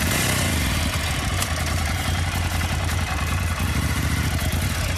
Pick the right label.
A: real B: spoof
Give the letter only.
B